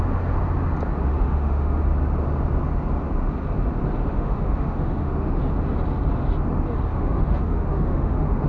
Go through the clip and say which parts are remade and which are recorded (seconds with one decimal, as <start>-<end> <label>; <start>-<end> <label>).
0.0-1.1 recorded; 1.1-1.8 remade; 1.8-4.0 recorded; 4.0-5.4 remade; 5.4-6.9 recorded; 6.9-8.5 remade